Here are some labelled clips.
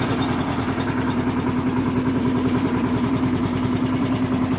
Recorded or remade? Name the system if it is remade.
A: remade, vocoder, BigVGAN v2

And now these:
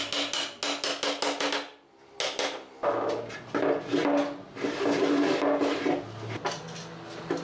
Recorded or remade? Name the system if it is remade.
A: recorded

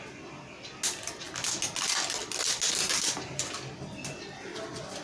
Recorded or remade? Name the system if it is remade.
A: recorded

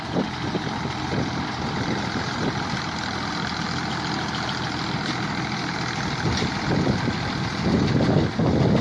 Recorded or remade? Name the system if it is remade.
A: recorded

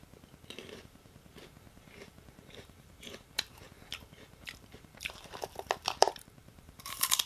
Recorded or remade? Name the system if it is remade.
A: remade, vocoder, BigVGAN v2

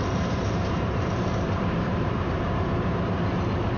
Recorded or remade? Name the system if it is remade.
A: remade, vocoder, BigVGAN v2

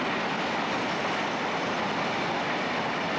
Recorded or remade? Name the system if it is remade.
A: recorded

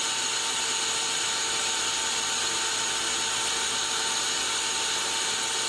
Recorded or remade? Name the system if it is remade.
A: recorded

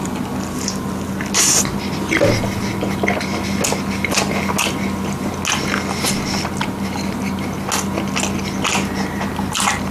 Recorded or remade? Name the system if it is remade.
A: recorded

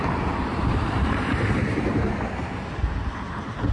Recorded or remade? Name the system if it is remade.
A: remade, vocoder, BigVGAN v2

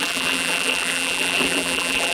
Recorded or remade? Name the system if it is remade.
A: remade, vocoder, BigVGAN v2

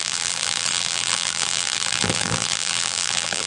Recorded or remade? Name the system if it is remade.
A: remade, vocoder, BigVGAN v2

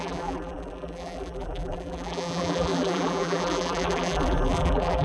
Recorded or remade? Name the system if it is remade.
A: remade, vocoder, BigVGAN v2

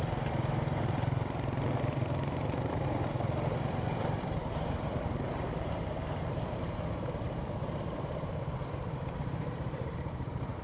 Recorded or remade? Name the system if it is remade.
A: remade, vocoder, BigVGAN v2